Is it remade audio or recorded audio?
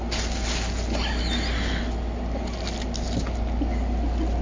recorded